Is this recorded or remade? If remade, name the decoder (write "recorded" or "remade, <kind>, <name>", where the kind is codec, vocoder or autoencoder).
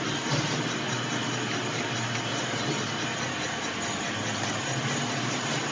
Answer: recorded